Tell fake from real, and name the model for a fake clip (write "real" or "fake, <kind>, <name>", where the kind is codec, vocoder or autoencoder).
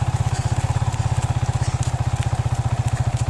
real